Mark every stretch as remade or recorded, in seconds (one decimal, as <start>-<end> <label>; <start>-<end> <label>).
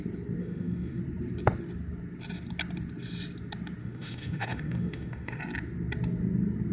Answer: 0.0-0.4 recorded; 0.4-1.0 remade; 1.0-3.8 recorded; 3.8-5.4 remade; 5.4-6.7 recorded